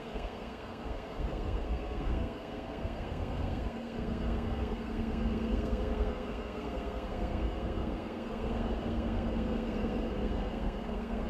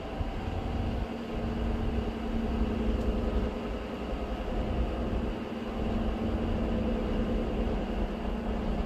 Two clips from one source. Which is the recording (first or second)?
second